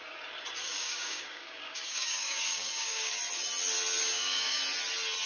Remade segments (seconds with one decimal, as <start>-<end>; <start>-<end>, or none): 0.6-3.2; 4.0-4.6